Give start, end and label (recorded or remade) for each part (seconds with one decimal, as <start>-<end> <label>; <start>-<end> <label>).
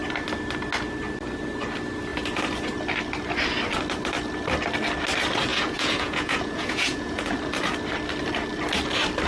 0.0-5.5 recorded; 5.5-7.3 remade; 7.3-9.3 recorded